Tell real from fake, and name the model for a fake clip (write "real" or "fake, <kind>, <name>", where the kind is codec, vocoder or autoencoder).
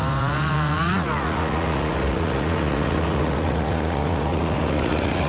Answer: fake, vocoder, Vocos